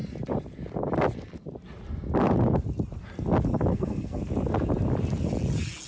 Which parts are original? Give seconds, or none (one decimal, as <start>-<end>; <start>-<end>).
0.0-3.7; 4.2-5.9

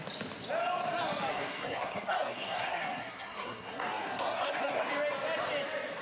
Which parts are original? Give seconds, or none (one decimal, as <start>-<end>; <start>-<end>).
0.0-1.3; 4.9-6.0

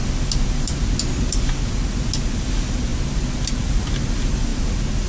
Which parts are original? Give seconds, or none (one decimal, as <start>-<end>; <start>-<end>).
0.0-5.1

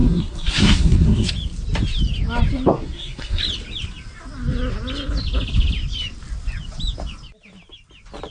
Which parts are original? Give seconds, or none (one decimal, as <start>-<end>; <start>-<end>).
1.3-2.7; 3.4-8.3

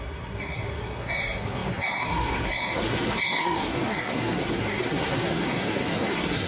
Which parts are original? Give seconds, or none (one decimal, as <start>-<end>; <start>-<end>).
none

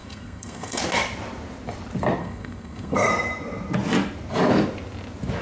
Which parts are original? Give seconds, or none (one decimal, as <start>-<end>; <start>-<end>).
0.8-2.2; 3.1-5.4

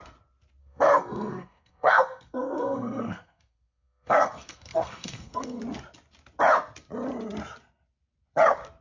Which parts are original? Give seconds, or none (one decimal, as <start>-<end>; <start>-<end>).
0.0-0.6; 5.6-8.8

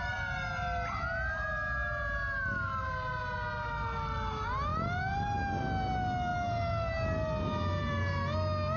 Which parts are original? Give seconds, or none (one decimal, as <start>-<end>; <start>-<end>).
0.0-8.8